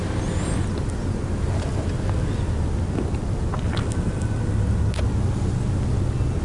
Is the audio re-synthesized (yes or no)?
no